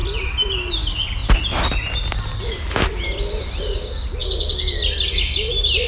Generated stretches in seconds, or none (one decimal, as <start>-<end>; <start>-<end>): 0.0-0.7; 1.2-1.9

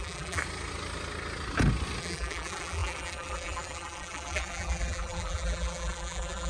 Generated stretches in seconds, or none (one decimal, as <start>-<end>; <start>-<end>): 0.0-0.4; 2.0-6.5

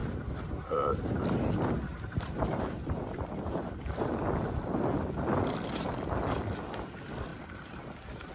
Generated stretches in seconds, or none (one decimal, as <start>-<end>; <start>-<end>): 0.0-0.7; 1.9-4.2

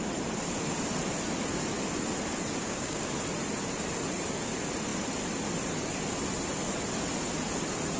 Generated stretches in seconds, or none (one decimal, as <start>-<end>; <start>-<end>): 2.6-3.1

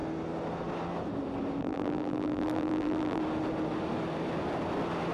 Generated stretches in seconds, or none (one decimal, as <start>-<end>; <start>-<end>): 1.6-3.2